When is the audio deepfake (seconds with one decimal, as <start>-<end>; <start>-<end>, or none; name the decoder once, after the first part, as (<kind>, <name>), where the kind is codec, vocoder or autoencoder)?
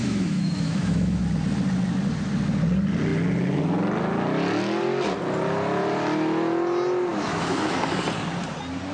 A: 0.0-1.2 (autoencoder, DAC-VAE); 7.1-7.8